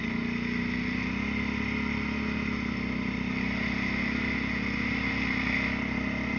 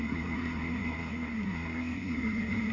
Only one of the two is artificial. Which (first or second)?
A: second